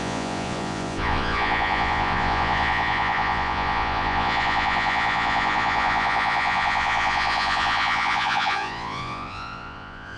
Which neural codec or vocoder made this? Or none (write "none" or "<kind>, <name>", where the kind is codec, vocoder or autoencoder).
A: vocoder, Vocos